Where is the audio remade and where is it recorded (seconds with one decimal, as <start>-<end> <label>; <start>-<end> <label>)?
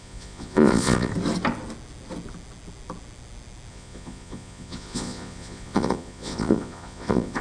0.0-1.1 remade; 1.1-3.7 recorded; 3.7-7.4 remade